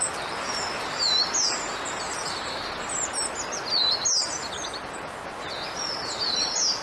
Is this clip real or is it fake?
real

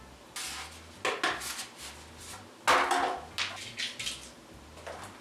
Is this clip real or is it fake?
real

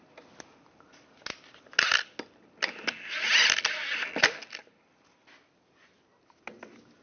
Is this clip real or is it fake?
real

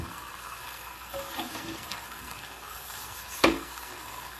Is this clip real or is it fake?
fake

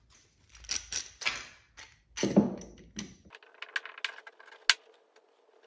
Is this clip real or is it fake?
real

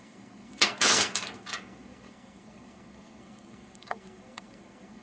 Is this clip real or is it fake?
fake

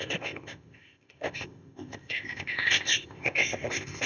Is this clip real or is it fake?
fake